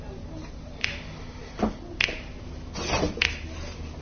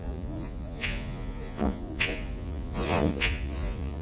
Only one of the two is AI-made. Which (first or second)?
second